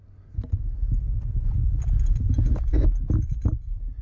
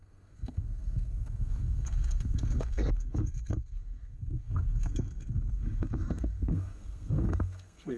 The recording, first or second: first